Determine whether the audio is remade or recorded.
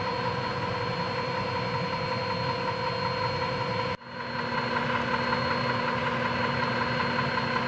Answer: recorded